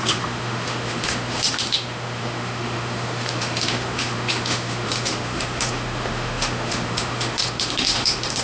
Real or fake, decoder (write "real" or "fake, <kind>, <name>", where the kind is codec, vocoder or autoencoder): fake, autoencoder, DAC-VAE